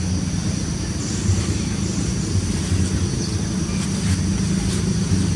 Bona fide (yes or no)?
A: yes